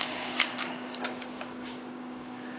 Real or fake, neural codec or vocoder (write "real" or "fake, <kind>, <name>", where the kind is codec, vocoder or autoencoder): fake, codec, DAC